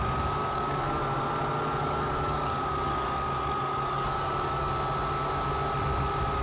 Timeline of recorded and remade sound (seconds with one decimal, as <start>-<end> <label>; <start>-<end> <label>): 0.0-0.4 recorded; 0.4-1.0 remade; 1.0-1.8 recorded; 1.8-4.7 remade; 4.7-6.4 recorded